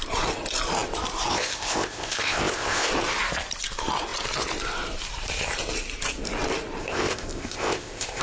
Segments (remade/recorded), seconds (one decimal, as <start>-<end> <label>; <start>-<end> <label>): 0.0-1.3 recorded; 1.3-2.9 remade; 2.9-6.8 recorded; 6.8-8.2 remade